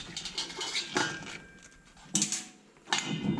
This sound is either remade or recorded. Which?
recorded